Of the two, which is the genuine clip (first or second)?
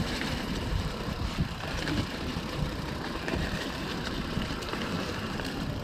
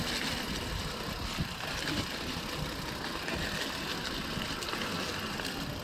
second